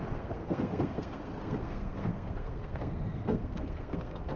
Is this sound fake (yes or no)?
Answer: yes